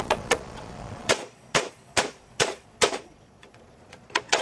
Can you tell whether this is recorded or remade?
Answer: remade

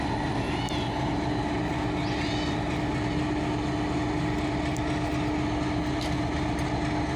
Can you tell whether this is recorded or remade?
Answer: recorded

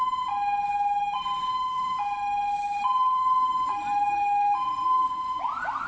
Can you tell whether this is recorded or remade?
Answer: recorded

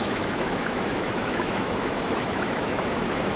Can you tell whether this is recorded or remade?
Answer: remade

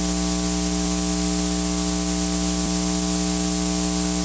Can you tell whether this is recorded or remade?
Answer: recorded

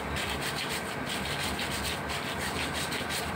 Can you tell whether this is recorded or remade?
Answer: recorded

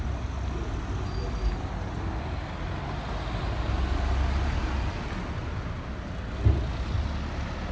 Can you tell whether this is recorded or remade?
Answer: recorded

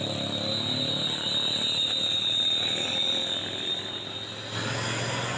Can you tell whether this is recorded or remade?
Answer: recorded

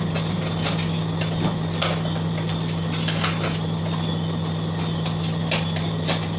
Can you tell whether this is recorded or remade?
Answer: recorded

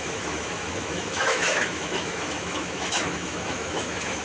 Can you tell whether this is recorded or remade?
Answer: remade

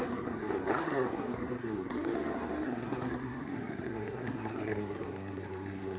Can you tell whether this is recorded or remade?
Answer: remade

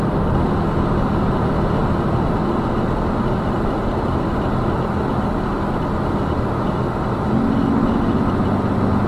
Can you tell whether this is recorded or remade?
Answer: recorded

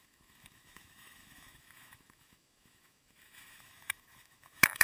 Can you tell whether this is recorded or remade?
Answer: remade